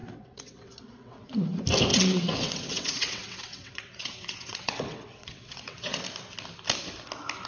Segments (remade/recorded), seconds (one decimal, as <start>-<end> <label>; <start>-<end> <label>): 0.0-1.3 remade; 1.3-1.9 recorded; 1.9-6.0 remade; 6.0-7.5 recorded